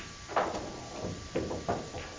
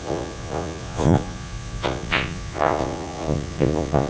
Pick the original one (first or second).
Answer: first